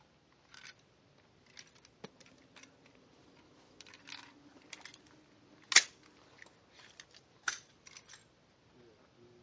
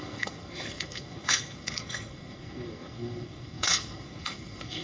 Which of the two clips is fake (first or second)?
second